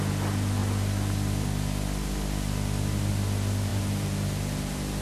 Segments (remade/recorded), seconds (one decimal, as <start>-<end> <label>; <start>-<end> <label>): 0.0-3.7 recorded; 3.7-5.0 remade